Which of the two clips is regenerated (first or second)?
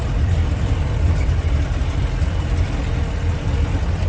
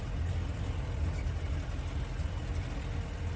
first